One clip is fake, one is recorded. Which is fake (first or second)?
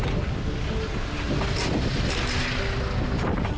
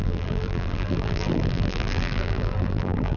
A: second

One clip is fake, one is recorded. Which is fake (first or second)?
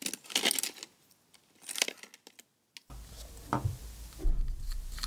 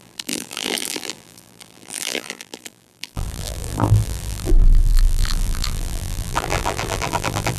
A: second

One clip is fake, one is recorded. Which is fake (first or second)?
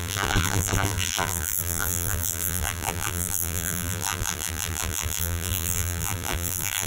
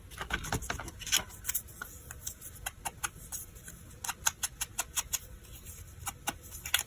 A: first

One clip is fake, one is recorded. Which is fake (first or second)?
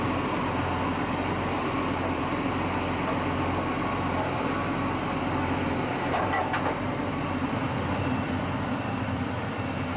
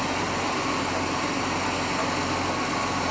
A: first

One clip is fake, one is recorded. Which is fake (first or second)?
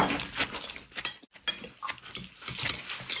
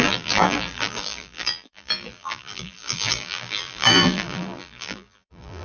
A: second